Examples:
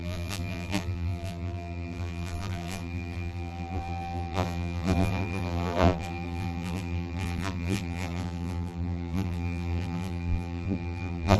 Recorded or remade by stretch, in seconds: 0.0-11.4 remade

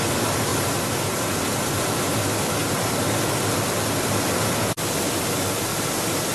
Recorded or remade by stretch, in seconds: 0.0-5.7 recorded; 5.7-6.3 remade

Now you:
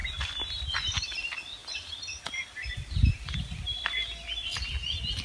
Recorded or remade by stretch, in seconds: 0.0-0.7 remade; 0.7-1.6 recorded; 1.6-4.7 remade; 4.7-5.2 recorded

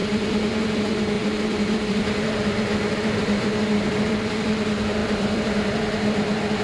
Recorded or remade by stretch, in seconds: 0.0-6.6 remade

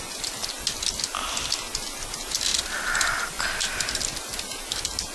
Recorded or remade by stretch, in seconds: 0.0-2.5 recorded; 2.5-3.4 remade; 3.4-5.1 recorded

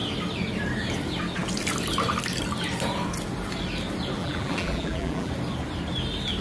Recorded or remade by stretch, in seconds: 0.0-4.2 recorded; 4.2-5.3 remade; 5.3-6.4 recorded

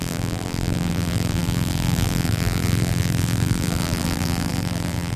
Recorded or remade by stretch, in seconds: 0.0-5.2 remade